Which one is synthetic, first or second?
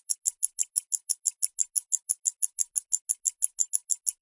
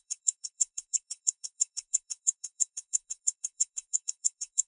second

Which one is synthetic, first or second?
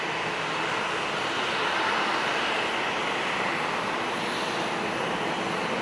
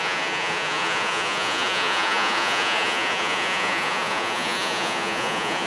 second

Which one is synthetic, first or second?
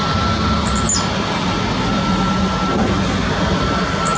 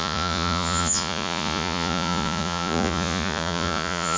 second